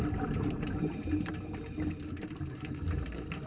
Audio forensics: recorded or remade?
recorded